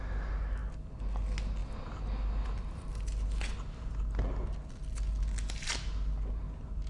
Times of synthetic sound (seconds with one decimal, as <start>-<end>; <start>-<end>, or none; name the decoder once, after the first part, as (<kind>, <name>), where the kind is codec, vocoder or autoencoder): none